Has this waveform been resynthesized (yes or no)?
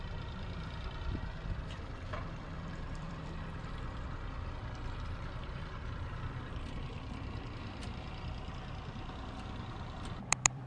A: yes